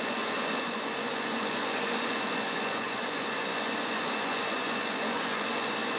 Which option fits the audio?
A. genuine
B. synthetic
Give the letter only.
B